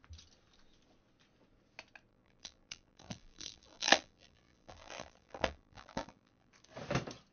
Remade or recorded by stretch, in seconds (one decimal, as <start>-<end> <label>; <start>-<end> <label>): 0.0-2.1 recorded; 2.1-6.5 remade; 6.5-7.3 recorded